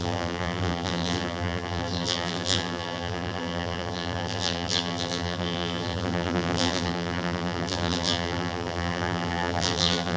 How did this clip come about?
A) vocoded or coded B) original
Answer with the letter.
A